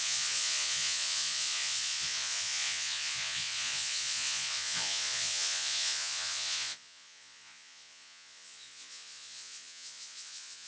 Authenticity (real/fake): fake